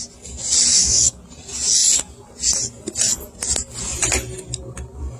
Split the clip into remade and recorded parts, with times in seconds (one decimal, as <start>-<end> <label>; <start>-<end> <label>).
0.0-0.7 recorded; 0.7-1.2 remade; 1.2-5.2 recorded